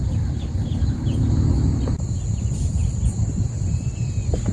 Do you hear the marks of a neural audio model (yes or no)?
no